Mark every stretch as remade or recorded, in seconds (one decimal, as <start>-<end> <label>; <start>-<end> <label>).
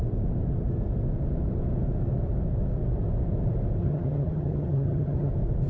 0.0-3.8 recorded; 3.8-5.3 remade; 5.3-5.7 recorded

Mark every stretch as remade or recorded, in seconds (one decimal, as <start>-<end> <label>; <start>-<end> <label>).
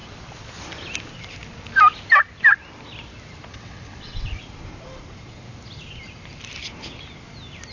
0.0-3.5 recorded; 3.5-4.4 remade; 4.4-7.7 recorded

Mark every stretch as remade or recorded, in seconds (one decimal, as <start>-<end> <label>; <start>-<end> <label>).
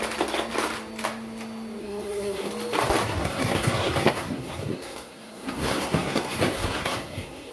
0.0-1.8 recorded; 1.8-2.5 remade; 2.5-3.0 recorded; 3.0-7.5 remade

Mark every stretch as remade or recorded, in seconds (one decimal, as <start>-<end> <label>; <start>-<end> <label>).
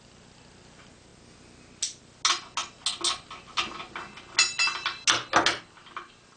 0.0-6.4 recorded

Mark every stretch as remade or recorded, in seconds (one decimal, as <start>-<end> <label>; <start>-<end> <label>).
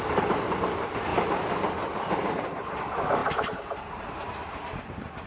0.0-1.1 remade; 1.1-2.1 recorded; 2.1-5.3 remade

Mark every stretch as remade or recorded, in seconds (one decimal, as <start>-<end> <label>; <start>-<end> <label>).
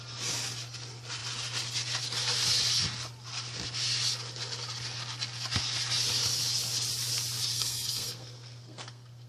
0.0-7.5 recorded; 7.5-9.3 remade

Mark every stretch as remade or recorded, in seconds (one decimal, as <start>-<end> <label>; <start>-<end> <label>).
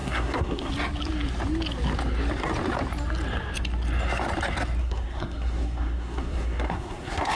0.0-0.7 remade; 0.7-4.8 recorded; 4.8-7.4 remade